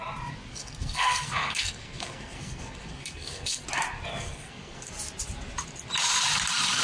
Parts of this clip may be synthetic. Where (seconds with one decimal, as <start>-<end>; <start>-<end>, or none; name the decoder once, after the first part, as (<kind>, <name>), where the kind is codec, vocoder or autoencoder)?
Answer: 0.5-3.6 (codec, SNAC); 4.1-4.9